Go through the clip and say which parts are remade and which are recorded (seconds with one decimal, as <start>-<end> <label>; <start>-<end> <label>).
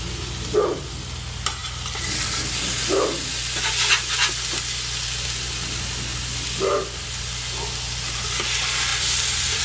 0.0-8.9 recorded; 8.9-9.6 remade